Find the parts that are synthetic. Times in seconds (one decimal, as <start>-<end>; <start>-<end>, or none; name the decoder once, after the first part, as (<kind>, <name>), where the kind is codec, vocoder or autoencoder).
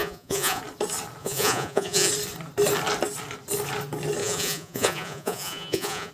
0.0-0.6 (vocoder, Vocos); 1.2-2.1; 4.2-6.1